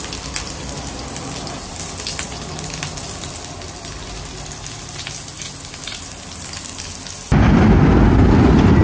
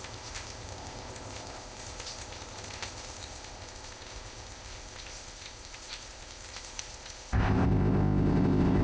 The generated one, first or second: second